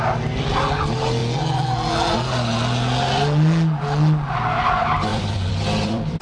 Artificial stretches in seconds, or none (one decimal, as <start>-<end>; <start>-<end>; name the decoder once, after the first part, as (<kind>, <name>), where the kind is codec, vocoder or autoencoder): 5.1-6.2 (vocoder, BigVGAN v2)